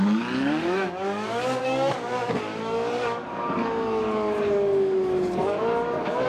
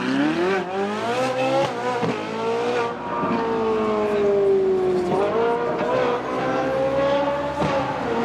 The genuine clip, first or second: second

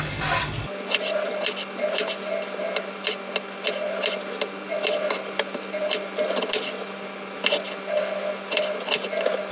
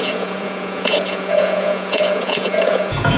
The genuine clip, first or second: first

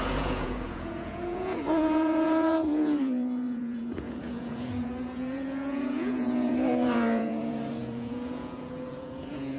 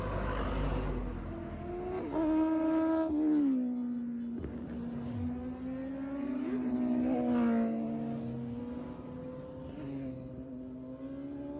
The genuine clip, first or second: second